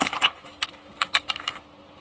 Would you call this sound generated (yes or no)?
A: no